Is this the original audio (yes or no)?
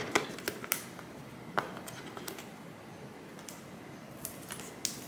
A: yes